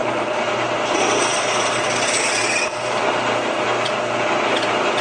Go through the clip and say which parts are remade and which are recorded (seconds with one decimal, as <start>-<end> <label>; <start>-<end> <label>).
0.0-5.0 recorded